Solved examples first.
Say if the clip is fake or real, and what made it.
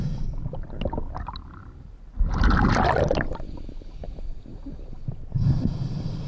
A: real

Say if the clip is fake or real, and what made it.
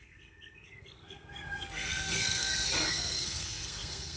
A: fake, codec, SNAC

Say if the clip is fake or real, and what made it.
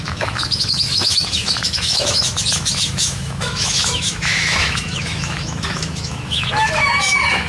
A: fake, autoencoder, DAC-VAE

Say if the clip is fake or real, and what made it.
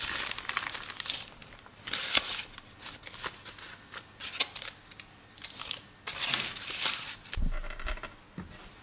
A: real